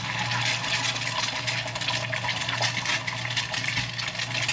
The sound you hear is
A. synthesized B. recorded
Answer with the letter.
B